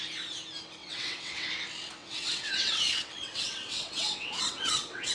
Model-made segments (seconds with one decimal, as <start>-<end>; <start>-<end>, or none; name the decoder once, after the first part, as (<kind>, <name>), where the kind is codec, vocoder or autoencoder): 0.8-1.5 (vocoder, WaveNeXt); 2.0-5.1